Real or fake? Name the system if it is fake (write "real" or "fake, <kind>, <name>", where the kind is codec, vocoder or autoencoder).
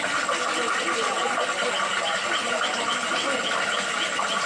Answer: real